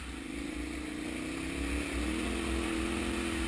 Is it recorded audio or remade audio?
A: recorded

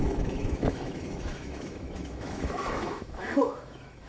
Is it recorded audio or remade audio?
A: remade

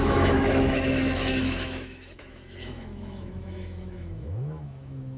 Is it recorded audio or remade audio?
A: remade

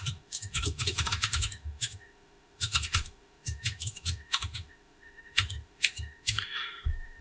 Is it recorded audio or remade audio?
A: remade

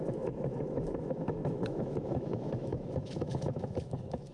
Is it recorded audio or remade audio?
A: remade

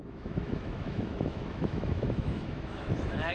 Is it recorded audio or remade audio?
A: remade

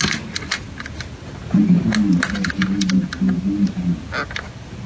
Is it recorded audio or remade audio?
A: recorded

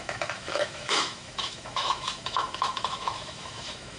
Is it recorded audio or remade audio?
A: remade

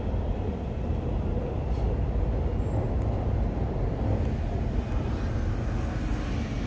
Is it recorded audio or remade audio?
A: recorded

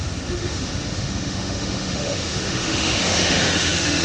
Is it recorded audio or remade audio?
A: remade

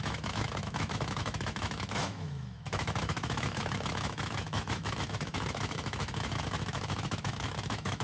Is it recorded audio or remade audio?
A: remade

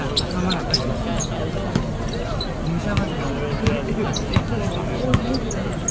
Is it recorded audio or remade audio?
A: recorded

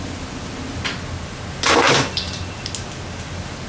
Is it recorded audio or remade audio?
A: recorded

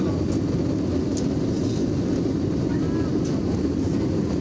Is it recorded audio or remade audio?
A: recorded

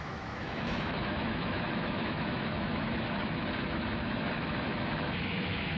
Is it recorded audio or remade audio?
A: remade